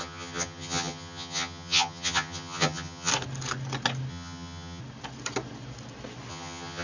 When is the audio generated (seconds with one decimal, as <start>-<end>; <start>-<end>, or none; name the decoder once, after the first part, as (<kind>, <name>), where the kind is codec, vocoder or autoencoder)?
0.0-3.1 (vocoder, HiFi-GAN); 4.1-4.8; 6.3-6.8